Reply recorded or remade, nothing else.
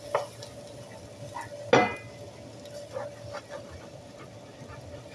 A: recorded